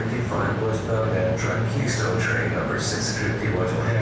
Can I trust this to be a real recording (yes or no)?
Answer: yes